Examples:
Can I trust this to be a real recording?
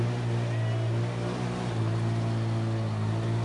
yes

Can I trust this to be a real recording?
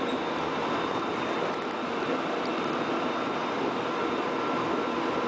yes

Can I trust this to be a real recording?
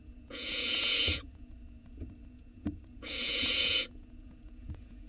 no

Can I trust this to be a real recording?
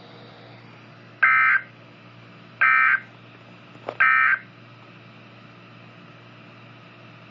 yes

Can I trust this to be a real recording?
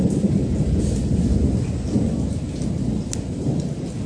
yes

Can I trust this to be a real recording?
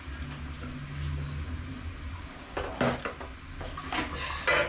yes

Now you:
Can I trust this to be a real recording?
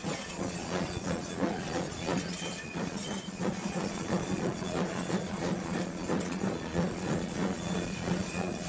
no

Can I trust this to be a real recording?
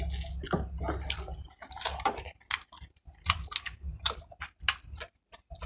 yes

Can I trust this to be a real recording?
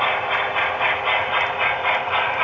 yes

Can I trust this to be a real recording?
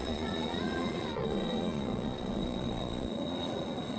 no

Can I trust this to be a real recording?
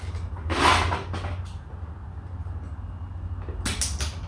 yes